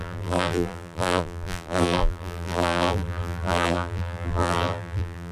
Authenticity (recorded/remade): remade